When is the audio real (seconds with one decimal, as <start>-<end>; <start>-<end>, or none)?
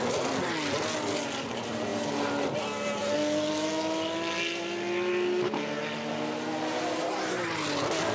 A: 0.0-8.1